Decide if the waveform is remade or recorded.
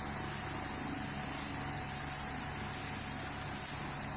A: recorded